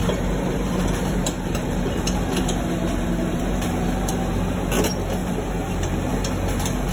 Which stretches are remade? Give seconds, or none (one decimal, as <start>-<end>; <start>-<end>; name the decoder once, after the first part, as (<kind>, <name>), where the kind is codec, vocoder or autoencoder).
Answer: 0.0-4.1 (vocoder, BigVGAN v2); 5.2-6.1